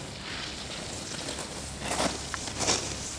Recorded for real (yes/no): yes